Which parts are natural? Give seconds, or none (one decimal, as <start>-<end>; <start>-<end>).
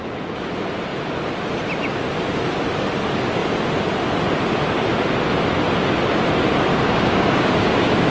0.0-6.7